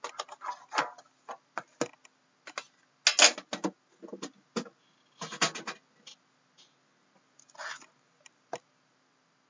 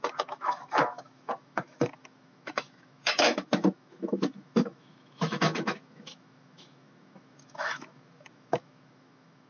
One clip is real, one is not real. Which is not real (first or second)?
second